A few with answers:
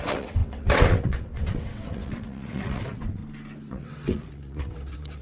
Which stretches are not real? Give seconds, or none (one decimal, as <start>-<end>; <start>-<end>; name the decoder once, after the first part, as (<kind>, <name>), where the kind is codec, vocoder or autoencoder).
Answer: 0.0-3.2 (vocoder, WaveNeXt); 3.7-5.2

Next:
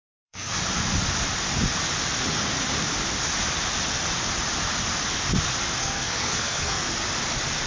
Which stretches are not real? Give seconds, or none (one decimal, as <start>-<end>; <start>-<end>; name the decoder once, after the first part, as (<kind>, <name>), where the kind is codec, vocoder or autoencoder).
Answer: 0.0-0.6 (codec, SNAC); 5.8-6.9

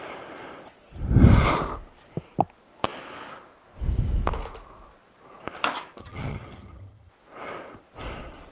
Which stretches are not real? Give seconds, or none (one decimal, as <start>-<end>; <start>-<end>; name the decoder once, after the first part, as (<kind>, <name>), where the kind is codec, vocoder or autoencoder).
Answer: 6.0-7.1 (vocoder, HiFi-GAN)

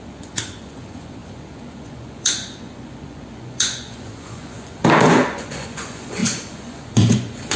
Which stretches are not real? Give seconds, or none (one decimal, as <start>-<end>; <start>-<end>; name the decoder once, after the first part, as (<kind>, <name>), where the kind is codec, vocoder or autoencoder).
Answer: 0.0-7.6 (vocoder, Vocos)

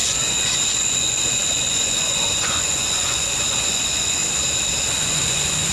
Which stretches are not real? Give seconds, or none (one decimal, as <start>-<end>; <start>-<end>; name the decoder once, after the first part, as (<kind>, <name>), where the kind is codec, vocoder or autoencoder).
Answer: 0.0-4.2 (vocoder, Vocos); 4.9-5.7

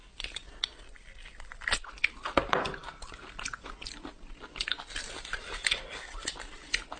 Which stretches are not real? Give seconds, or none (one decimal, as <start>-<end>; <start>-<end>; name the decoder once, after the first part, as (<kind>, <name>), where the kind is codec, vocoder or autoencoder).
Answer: none

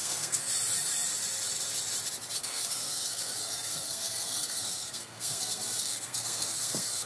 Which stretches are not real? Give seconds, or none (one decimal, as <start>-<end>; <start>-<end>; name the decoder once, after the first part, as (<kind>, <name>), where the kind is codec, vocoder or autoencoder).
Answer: 0.0-0.5 (codec, SNAC); 2.4-7.1